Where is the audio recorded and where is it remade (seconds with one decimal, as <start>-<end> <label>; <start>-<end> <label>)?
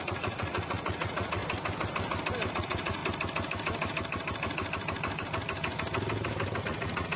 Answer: 0.0-1.4 remade; 1.4-2.5 recorded; 2.5-3.0 remade; 3.0-6.6 recorded; 6.6-7.2 remade